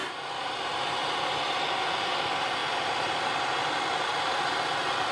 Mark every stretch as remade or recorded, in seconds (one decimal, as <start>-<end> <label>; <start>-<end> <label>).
0.0-5.1 recorded